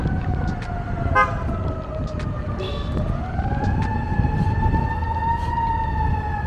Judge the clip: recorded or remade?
recorded